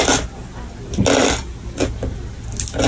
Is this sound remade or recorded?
recorded